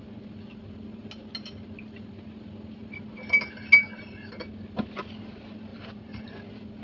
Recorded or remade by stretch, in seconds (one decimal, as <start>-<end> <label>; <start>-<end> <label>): 0.0-5.7 recorded; 5.7-6.3 remade; 6.3-6.8 recorded